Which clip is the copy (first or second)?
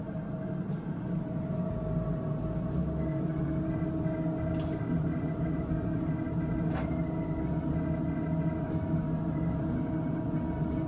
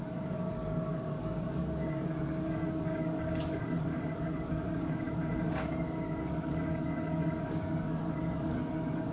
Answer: second